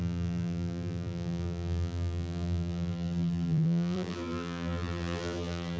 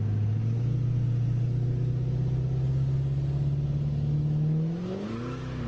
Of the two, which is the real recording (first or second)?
second